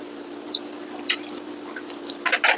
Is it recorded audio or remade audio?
remade